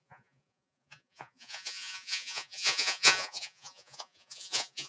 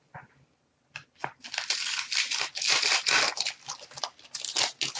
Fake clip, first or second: first